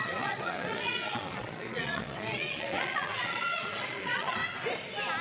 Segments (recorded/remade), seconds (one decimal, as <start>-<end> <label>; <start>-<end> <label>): 0.0-4.4 remade; 4.4-5.2 recorded